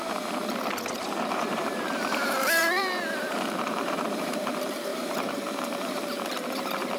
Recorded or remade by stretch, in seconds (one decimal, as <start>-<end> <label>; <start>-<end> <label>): 0.0-1.3 recorded; 1.3-7.0 remade